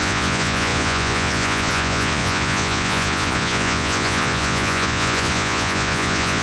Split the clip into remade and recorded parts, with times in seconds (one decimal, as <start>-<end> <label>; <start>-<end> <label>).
0.0-6.4 remade

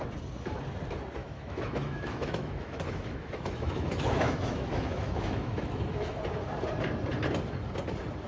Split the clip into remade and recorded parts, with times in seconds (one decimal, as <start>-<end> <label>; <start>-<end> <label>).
0.0-1.2 recorded; 1.2-6.2 remade; 6.2-8.3 recorded

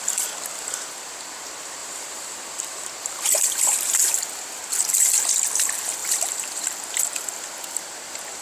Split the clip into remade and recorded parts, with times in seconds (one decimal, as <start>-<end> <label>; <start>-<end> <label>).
0.0-1.8 recorded; 1.8-4.0 remade; 4.0-6.0 recorded; 6.0-6.8 remade; 6.8-8.4 recorded